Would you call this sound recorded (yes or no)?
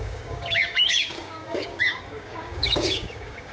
no